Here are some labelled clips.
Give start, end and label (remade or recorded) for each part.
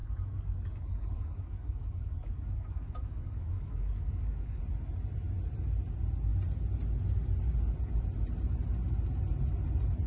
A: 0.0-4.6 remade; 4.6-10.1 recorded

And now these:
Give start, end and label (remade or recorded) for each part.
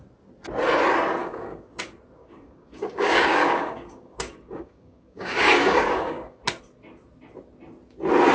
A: 0.0-1.2 recorded; 1.2-1.8 remade; 1.8-2.2 recorded; 2.2-6.4 remade; 6.4-8.3 recorded